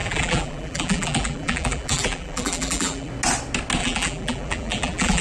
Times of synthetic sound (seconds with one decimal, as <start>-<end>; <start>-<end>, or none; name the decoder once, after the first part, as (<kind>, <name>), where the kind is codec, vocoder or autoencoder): 0.0-3.1 (vocoder, BigVGAN v2); 3.8-5.2